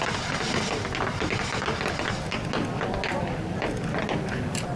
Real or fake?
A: real